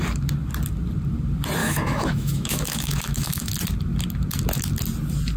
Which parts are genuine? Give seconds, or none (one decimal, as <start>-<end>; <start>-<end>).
0.0-1.6; 3.5-5.4